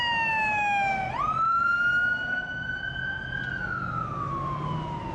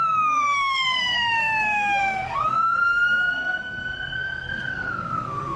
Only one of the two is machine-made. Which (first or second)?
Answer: second